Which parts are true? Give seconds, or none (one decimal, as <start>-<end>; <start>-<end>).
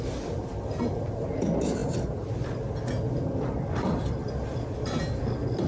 0.0-5.7